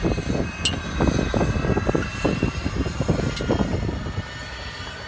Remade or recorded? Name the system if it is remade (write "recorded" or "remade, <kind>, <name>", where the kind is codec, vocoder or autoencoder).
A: recorded